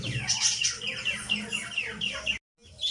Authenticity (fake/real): real